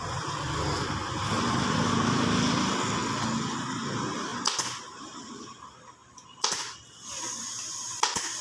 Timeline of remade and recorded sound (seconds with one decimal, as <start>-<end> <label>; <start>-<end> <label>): 0.0-8.4 recorded